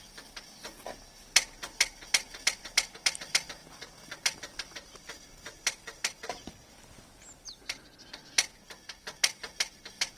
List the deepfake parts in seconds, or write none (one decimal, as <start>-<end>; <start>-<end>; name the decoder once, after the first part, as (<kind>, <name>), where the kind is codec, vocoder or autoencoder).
none